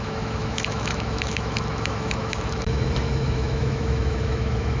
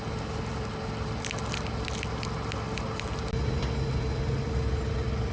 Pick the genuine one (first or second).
second